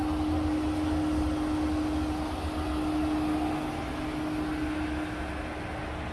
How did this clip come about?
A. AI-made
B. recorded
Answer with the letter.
B